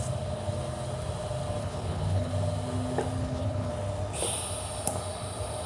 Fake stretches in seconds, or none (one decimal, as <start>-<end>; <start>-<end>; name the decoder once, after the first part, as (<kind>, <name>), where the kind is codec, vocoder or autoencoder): 1.6-2.3 (codec, HILCodec); 3.2-3.7